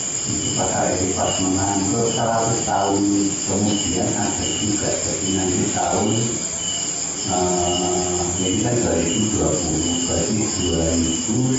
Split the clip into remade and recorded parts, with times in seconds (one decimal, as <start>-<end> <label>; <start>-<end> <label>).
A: 0.0-2.0 recorded; 2.0-2.9 remade; 2.9-4.5 recorded; 4.5-7.4 remade; 7.4-11.6 recorded